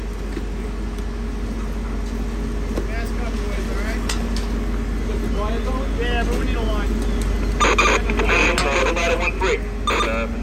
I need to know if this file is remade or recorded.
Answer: recorded